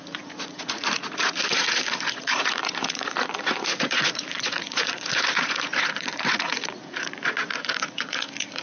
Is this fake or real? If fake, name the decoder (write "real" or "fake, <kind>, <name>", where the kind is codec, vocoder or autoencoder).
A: fake, vocoder, Vocos